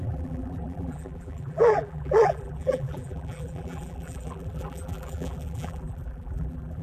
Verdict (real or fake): fake